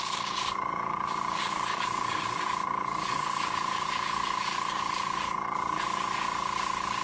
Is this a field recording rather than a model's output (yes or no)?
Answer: no